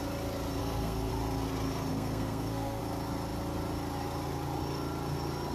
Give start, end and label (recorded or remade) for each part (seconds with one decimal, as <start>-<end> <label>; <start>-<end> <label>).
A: 0.0-0.6 recorded; 0.6-1.1 remade; 1.1-1.9 recorded; 1.9-2.8 remade; 2.8-5.5 recorded